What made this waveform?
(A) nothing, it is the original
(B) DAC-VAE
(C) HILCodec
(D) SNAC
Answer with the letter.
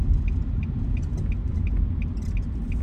A